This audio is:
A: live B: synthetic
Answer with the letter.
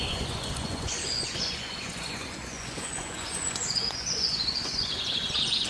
B